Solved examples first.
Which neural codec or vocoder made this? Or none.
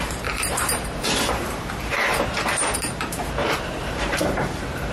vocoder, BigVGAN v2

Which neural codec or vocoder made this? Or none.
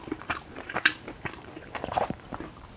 vocoder, BigVGAN v2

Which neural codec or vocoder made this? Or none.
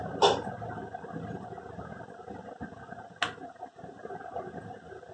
none